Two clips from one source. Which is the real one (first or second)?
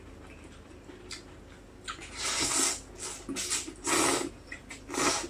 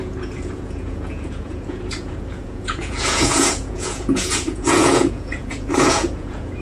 first